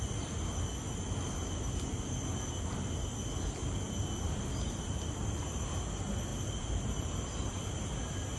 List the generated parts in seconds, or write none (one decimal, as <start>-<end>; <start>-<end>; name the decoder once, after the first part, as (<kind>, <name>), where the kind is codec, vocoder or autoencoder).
3.6-5.3 (vocoder, BigVGAN v2); 6.3-7.6